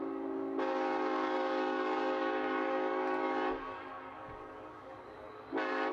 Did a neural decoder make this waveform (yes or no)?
yes